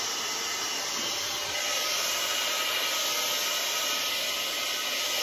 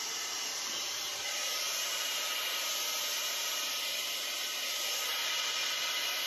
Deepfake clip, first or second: second